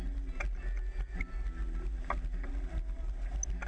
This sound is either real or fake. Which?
real